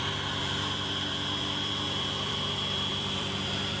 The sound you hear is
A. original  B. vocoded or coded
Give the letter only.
B